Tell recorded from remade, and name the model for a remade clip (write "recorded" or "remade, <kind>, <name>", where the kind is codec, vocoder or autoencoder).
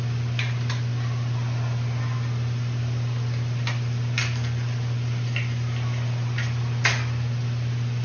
recorded